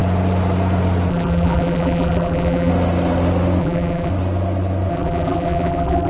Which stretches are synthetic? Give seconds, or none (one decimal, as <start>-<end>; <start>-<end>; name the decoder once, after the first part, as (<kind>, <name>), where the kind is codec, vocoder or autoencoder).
1.1-2.7 (vocoder, BigVGAN v2); 3.6-4.1; 4.9-6.1